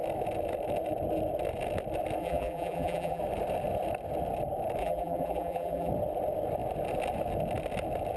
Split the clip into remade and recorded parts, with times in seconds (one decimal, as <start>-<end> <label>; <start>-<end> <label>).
0.0-2.2 recorded; 2.2-3.2 remade; 3.2-4.8 recorded; 4.8-5.9 remade; 5.9-8.2 recorded